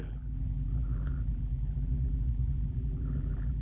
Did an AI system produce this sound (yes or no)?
yes